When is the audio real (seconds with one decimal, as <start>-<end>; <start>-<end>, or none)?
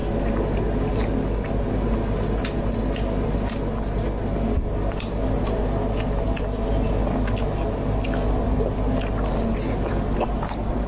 0.0-10.9